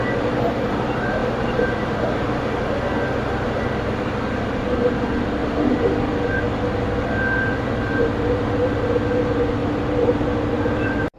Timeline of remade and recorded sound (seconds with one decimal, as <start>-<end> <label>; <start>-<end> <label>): 0.0-1.2 recorded; 1.2-2.2 remade; 2.2-5.4 recorded; 5.4-6.4 remade; 6.4-9.6 recorded; 9.6-11.2 remade